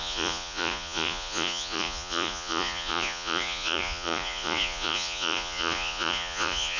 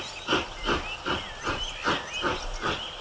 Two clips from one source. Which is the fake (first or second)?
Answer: first